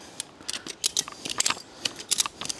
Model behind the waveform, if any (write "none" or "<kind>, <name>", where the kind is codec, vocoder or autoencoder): none